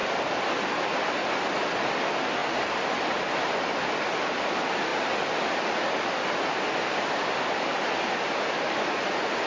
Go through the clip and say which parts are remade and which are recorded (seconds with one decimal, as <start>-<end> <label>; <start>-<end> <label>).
0.0-4.9 recorded; 4.9-6.4 remade; 6.4-9.5 recorded